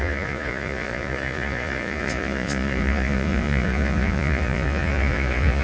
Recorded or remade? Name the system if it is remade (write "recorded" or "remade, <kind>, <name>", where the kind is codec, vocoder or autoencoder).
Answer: remade, vocoder, Vocos